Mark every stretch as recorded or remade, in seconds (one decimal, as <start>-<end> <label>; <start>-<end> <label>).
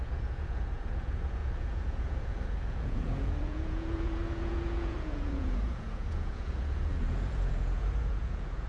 0.0-8.7 remade